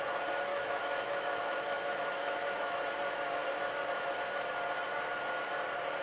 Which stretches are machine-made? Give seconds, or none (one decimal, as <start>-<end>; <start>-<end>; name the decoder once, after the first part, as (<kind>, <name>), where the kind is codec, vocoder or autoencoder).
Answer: 0.5-2.8 (autoencoder, DAC-VAE); 3.4-4.2

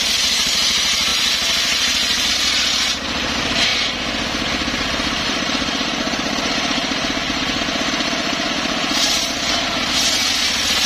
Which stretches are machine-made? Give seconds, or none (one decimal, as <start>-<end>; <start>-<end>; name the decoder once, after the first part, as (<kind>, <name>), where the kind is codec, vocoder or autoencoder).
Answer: 0.0-1.1 (vocoder, BigVGAN v2); 2.3-3.7; 5.2-10.9